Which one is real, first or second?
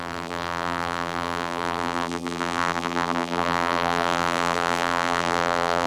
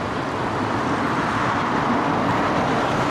second